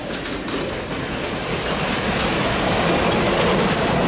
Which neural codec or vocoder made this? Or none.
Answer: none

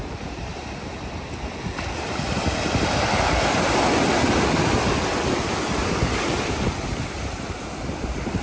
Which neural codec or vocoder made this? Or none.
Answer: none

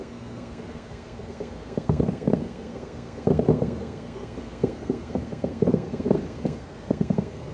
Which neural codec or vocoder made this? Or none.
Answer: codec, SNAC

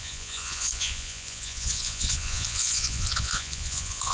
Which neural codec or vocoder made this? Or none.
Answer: vocoder, Vocos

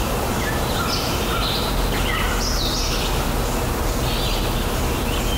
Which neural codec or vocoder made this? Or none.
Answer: none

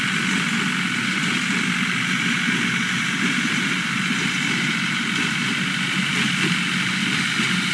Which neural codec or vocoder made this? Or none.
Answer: none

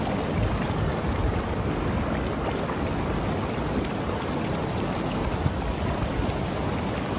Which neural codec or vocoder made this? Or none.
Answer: none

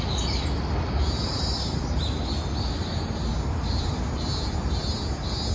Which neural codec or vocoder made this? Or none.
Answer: none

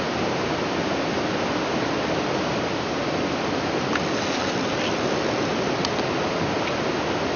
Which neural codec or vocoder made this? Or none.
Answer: none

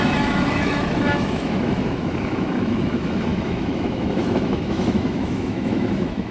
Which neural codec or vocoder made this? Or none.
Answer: autoencoder, DAC-VAE